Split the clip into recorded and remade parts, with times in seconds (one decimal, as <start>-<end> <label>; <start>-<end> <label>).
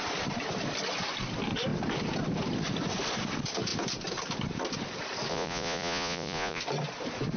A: 0.0-5.3 recorded; 5.3-6.6 remade; 6.6-7.4 recorded